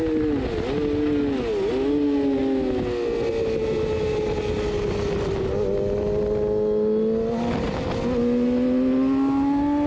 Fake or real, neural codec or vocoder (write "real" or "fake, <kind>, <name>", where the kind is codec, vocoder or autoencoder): real